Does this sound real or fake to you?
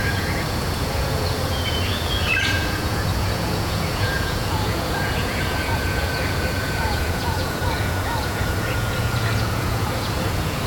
fake